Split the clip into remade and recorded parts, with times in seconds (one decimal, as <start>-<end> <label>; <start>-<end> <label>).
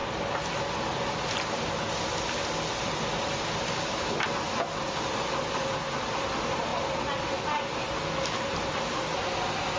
0.0-9.8 recorded